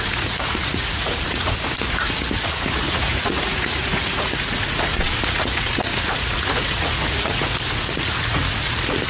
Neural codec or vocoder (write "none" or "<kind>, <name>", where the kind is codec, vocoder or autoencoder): vocoder, Vocos